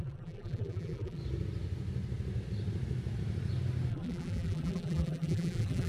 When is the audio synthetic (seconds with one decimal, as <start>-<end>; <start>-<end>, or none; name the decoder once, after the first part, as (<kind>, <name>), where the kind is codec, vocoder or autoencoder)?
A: 0.0-1.2 (vocoder, BigVGAN v2); 3.9-5.9